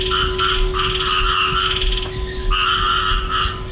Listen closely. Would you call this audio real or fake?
real